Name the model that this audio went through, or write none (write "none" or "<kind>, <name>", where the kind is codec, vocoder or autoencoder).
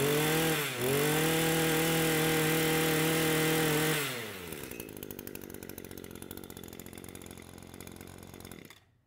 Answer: none